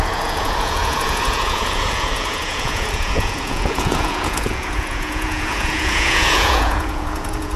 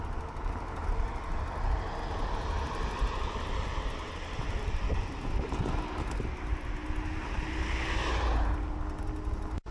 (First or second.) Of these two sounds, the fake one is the first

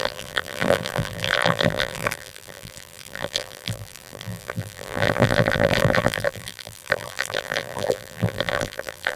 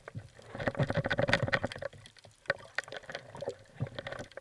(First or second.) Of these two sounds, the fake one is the first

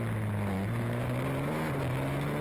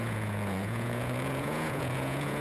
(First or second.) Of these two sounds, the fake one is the second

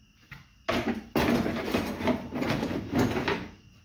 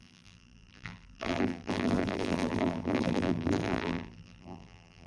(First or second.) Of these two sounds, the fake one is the second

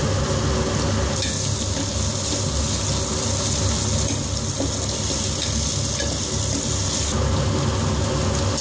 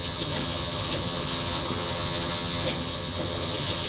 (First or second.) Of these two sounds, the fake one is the second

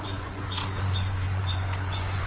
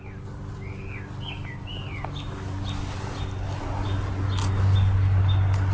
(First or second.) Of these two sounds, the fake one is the first